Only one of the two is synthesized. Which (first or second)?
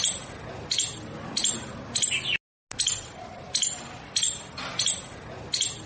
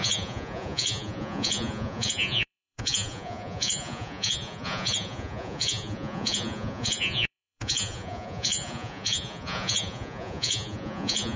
second